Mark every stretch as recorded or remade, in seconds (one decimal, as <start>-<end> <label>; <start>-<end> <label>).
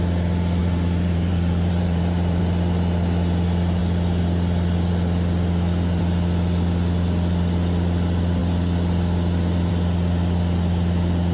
0.0-0.6 recorded; 0.6-2.4 remade; 2.4-11.3 recorded